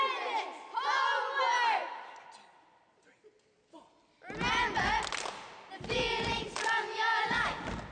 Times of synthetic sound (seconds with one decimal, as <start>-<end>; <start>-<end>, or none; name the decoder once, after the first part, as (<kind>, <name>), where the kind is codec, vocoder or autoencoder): none